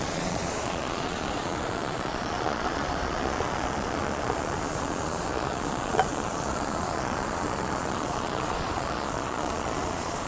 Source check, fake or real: fake